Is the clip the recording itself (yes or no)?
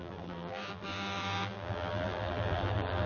no